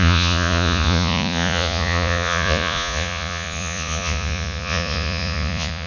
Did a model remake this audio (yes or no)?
yes